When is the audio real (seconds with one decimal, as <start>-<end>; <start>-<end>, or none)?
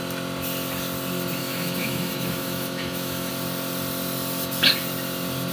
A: 0.0-1.4; 3.3-5.5